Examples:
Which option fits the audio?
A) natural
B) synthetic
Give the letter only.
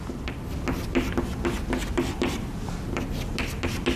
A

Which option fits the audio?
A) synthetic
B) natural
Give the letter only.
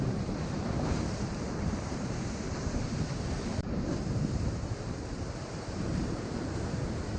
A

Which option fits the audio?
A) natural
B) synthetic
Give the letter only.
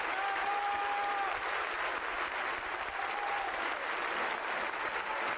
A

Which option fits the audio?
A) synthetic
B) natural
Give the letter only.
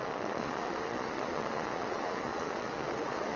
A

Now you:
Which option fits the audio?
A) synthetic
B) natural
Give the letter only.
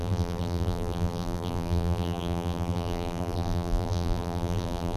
A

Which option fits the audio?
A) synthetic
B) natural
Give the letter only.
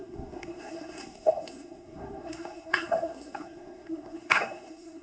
A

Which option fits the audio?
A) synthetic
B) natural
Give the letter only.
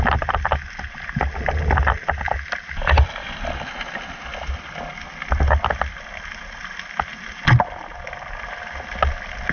B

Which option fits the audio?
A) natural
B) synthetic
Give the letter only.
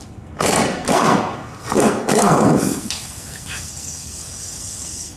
B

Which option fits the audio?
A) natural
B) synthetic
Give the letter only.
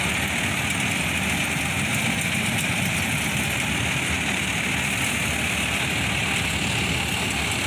A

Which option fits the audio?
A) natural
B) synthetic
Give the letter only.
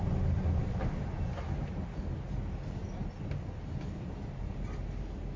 A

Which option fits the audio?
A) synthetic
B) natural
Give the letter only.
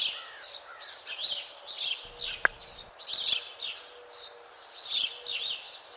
B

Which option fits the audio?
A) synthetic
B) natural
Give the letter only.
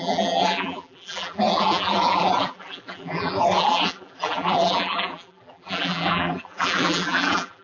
A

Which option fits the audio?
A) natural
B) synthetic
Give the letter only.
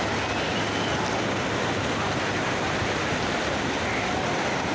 A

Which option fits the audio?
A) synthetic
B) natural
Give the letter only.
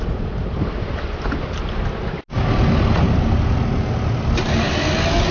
B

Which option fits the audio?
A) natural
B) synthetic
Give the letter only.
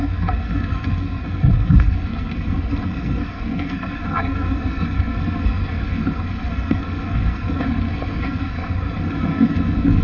B